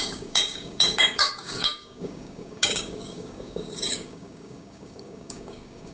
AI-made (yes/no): yes